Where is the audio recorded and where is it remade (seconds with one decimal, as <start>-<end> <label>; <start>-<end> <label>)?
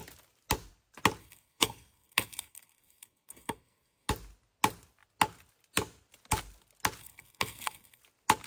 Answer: 0.0-1.2 recorded; 1.2-4.1 remade; 4.1-7.0 recorded; 7.0-8.0 remade; 8.0-8.5 recorded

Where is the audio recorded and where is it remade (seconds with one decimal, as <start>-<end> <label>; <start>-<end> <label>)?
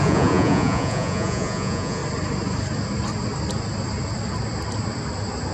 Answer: 0.0-2.0 remade; 2.0-5.5 recorded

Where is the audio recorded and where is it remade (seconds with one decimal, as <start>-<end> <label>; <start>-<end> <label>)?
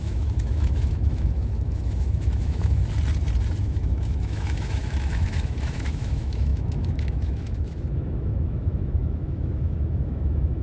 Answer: 0.0-2.8 remade; 2.8-3.6 recorded; 3.6-10.6 remade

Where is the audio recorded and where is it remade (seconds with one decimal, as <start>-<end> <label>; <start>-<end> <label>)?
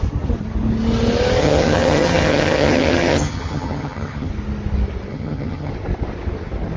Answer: 0.0-1.4 recorded; 1.4-4.3 remade; 4.3-5.1 recorded; 5.1-5.7 remade; 5.7-6.8 recorded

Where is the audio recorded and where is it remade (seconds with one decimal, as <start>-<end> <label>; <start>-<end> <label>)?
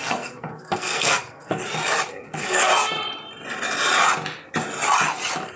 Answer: 0.0-1.6 remade; 1.6-2.1 recorded; 2.1-2.7 remade; 2.7-5.6 recorded